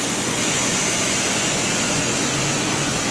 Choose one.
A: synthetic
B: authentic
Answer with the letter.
A